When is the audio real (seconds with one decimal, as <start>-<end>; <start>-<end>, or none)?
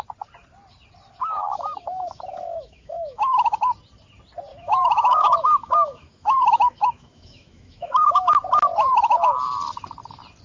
0.0-1.3; 3.6-4.5; 8.3-10.4